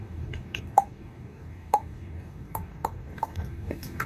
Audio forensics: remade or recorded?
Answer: remade